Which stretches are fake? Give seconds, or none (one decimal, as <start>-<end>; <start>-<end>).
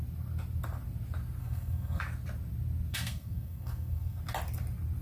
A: 1.4-2.0; 2.9-4.2